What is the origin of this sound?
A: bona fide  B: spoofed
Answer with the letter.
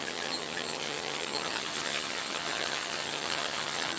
B